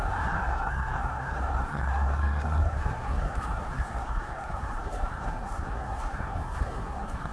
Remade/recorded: remade